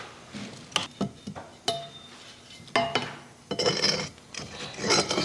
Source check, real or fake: real